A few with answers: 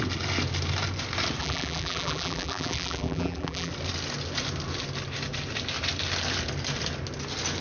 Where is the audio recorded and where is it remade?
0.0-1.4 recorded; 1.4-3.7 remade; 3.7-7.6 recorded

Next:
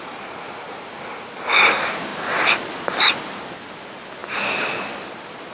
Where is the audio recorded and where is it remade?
0.0-5.5 recorded

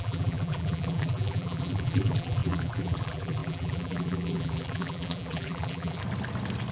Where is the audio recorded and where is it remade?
0.0-6.0 remade; 6.0-6.7 recorded

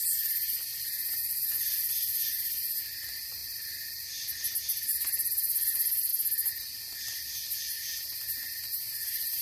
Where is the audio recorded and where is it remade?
0.0-6.1 remade; 6.1-6.6 recorded; 6.6-9.4 remade

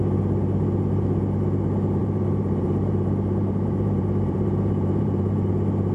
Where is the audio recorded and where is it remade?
0.0-2.0 recorded; 2.0-5.5 remade; 5.5-5.9 recorded

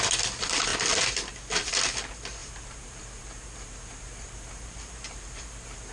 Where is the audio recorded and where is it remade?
0.0-2.4 recorded; 2.4-5.9 remade